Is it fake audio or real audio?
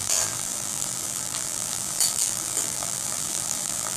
fake